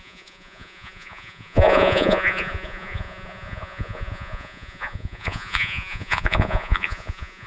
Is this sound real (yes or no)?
no